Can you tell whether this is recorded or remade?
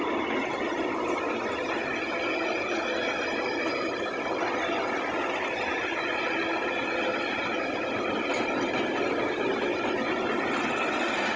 recorded